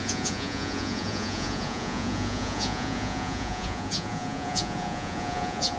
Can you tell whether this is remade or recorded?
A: remade